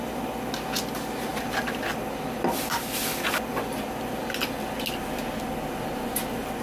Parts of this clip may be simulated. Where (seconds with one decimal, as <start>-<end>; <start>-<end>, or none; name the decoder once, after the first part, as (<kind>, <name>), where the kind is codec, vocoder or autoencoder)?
1.3-4.1 (vocoder, BigVGAN v2)